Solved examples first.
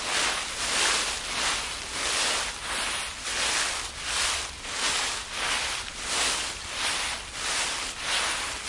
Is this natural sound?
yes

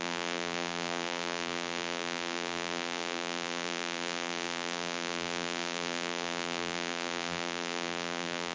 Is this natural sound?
no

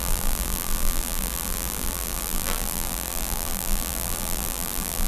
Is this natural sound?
no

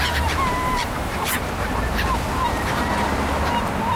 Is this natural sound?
no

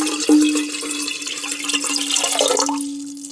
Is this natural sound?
yes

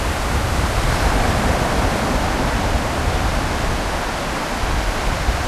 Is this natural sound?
yes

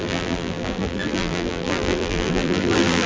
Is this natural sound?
no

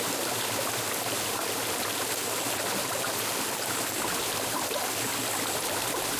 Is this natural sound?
yes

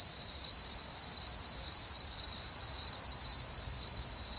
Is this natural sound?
no